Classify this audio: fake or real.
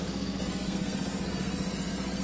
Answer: fake